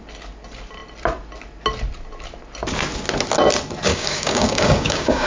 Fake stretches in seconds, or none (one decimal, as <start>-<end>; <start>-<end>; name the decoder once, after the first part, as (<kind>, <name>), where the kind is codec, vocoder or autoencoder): 3.9-5.3 (codec, DAC)